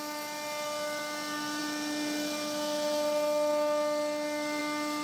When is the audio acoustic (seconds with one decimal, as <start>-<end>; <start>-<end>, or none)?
0.0-5.0